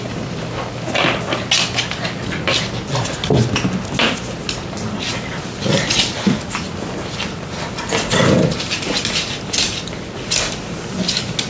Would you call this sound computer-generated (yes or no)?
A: no